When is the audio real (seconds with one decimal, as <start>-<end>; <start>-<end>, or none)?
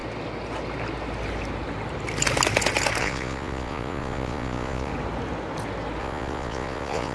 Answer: 0.0-3.0; 4.9-6.0